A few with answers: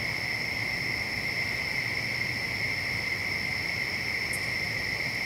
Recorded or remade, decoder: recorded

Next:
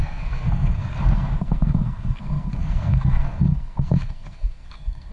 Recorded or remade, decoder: remade, codec, SNAC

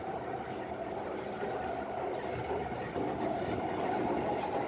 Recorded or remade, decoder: recorded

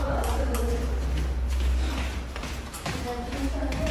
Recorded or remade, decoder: recorded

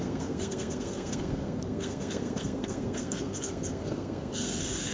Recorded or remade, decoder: remade, codec, SNAC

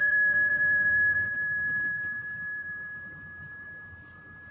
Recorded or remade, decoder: remade, vocoder, BigVGAN v2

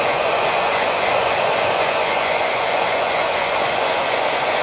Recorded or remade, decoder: remade, vocoder, Vocos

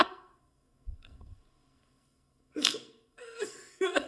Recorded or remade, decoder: remade, codec, SNAC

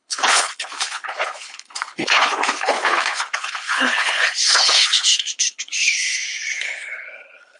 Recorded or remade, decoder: remade, codec, HILCodec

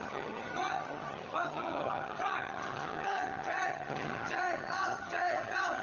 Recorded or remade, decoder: remade, vocoder, HiFi-GAN